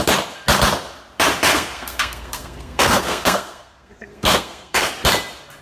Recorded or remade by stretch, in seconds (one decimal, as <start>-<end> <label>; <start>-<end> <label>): 0.0-1.5 recorded; 1.5-4.9 remade; 4.9-5.6 recorded